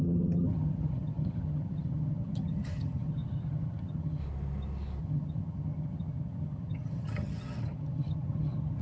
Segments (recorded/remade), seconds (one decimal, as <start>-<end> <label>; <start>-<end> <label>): 0.0-4.2 remade; 4.2-5.0 recorded; 5.0-8.8 remade